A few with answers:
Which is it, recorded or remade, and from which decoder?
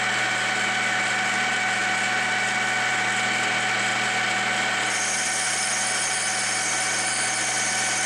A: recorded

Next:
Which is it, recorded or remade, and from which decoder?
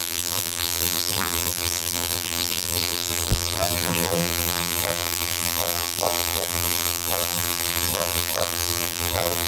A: remade, vocoder, BigVGAN v2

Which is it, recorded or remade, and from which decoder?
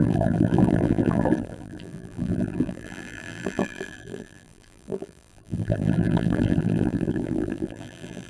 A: remade, vocoder, BigVGAN v2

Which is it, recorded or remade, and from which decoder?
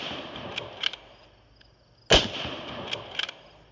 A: recorded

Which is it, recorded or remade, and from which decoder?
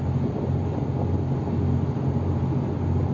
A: recorded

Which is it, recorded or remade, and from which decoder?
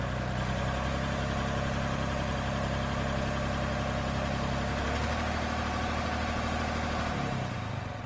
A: recorded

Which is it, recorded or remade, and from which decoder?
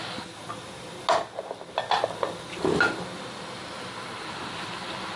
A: recorded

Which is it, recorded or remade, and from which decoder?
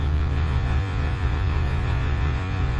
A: remade, vocoder, Vocos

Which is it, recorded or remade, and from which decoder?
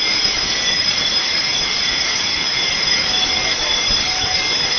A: remade, codec, DAC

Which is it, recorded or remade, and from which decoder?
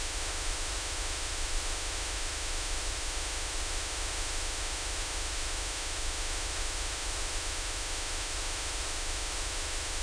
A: remade, autoencoder, DAC-VAE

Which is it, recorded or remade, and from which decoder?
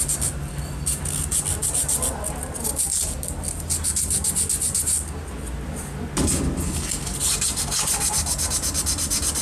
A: recorded